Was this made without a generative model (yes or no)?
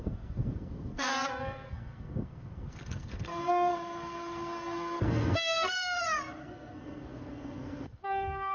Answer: no